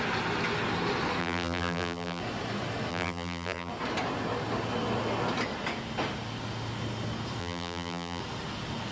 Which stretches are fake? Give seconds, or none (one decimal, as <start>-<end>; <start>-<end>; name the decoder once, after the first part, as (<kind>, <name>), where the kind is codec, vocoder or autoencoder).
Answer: 1.2-2.2 (vocoder, BigVGAN v2); 2.9-3.7; 7.4-8.2